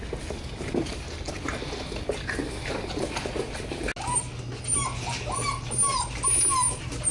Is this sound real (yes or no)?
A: yes